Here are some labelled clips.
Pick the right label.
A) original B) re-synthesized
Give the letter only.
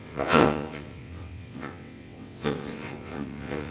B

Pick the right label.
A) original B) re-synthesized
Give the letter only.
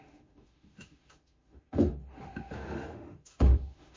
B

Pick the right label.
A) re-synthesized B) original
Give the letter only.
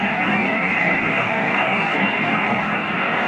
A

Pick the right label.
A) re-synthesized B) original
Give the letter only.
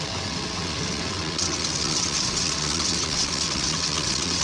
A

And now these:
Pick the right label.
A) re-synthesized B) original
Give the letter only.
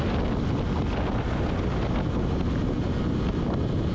B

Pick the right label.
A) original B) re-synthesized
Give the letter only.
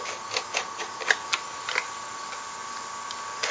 A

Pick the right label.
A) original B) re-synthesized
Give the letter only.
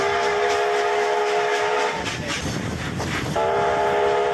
A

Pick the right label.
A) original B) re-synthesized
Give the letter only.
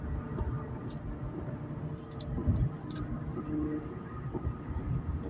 A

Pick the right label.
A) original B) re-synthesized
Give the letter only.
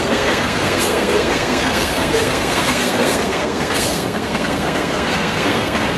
B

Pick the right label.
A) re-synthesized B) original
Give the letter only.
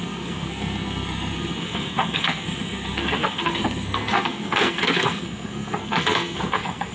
A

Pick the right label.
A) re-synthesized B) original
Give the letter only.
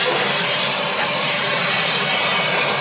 A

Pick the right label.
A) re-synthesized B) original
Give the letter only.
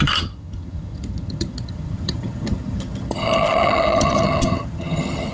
A